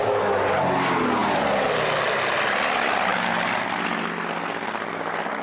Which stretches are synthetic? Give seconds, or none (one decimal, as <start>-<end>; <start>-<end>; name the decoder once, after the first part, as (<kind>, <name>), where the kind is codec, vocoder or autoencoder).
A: none